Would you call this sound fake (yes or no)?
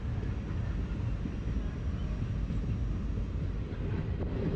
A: no